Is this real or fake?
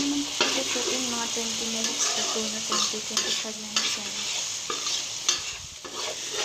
real